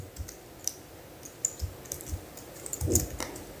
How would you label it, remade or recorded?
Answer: recorded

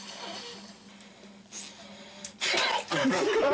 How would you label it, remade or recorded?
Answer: recorded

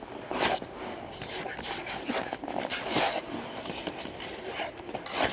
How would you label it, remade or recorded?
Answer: recorded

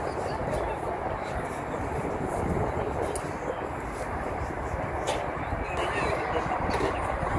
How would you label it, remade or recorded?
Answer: recorded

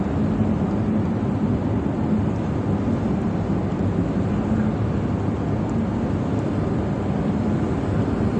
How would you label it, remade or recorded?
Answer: recorded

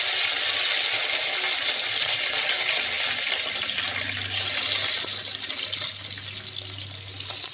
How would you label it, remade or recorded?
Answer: recorded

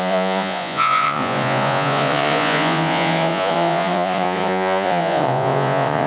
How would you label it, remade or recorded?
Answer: remade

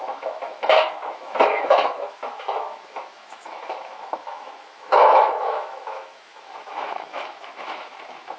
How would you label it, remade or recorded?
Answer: remade